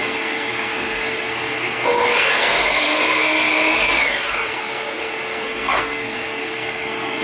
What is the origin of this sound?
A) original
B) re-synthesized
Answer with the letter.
B